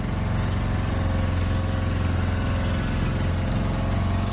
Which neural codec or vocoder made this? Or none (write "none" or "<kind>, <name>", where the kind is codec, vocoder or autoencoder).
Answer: none